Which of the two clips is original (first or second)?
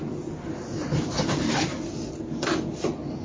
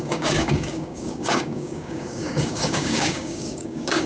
first